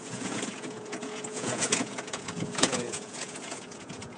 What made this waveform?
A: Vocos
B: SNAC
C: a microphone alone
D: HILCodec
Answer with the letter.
A